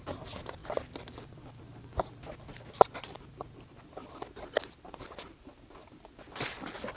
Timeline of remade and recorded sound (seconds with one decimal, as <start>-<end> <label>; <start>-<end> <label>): 0.0-0.6 remade; 0.6-4.8 recorded; 4.8-5.8 remade; 5.8-7.0 recorded